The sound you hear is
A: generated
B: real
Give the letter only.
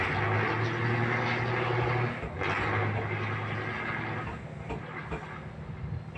B